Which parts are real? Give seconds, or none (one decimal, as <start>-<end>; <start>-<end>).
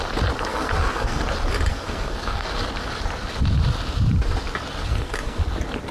0.0-0.5; 1.2-1.7; 2.6-4.9; 5.4-5.9